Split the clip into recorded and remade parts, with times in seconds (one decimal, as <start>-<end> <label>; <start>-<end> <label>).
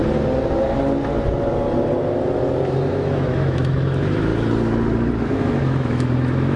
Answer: 0.0-2.9 recorded; 2.9-4.3 remade; 4.3-5.2 recorded; 5.2-6.6 remade